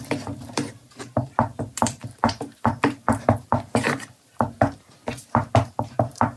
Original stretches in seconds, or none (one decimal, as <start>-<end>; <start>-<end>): 4.3-5.3